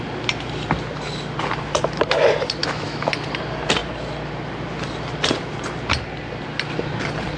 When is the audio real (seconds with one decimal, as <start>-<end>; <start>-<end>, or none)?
0.0-2.6; 3.1-7.4